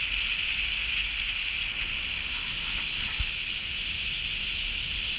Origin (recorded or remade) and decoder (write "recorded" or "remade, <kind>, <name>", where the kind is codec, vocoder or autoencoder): recorded